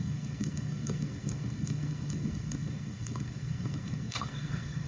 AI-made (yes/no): yes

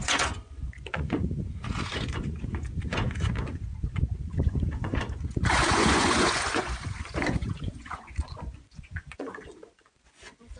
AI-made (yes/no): yes